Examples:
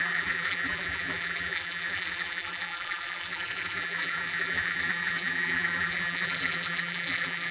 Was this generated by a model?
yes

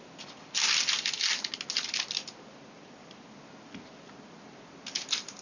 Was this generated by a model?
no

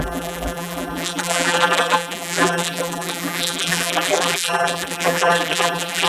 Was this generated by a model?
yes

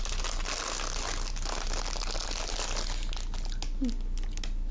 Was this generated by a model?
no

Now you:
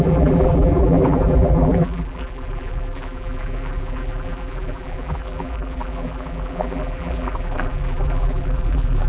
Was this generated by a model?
yes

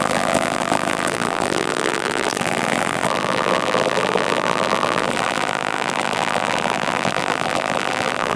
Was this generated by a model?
yes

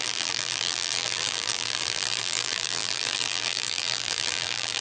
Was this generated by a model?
yes